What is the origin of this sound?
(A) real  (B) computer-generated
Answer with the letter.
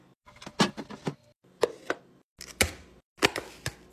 A